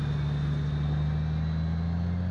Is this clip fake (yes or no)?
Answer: no